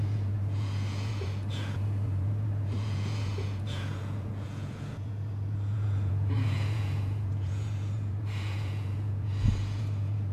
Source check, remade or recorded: remade